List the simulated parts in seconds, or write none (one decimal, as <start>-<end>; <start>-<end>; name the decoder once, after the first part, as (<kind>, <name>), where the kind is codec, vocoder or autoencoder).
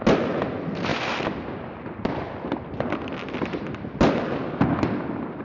0.9-3.6 (vocoder, BigVGAN v2)